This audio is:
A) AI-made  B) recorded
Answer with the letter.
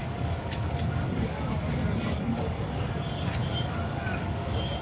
A